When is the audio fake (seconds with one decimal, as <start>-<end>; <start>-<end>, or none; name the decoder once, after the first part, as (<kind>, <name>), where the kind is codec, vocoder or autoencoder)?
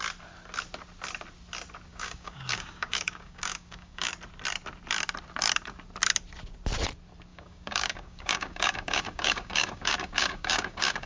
1.9-4.1 (codec, DAC); 7.3-11.1